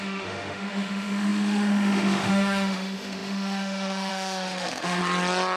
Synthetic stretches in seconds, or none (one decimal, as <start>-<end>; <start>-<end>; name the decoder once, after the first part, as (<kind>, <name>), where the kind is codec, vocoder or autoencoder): 0.0-5.0 (autoencoder, DAC-VAE)